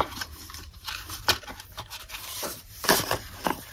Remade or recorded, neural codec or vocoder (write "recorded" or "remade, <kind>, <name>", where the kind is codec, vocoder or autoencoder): remade, vocoder, BigVGAN v2